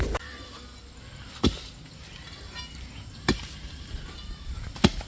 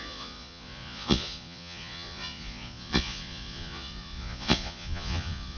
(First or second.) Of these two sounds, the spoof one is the second